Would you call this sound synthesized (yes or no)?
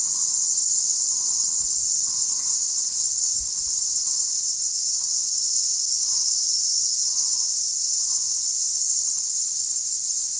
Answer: yes